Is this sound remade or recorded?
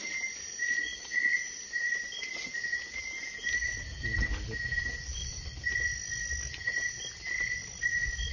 recorded